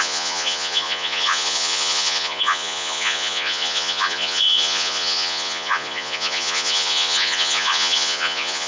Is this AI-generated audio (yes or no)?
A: yes